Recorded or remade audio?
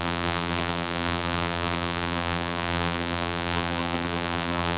remade